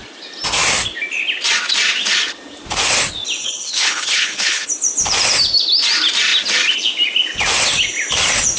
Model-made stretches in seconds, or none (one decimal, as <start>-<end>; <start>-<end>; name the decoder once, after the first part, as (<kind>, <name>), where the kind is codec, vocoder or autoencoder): 3.4-4.7 (codec, HILCodec)